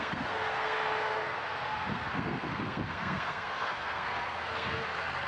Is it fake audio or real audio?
fake